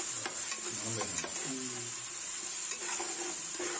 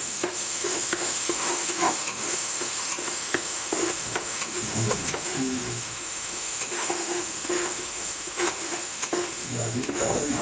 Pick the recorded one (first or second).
first